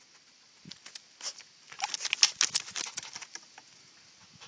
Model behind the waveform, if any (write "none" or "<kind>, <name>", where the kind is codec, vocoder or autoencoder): none